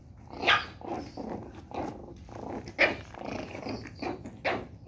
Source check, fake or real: real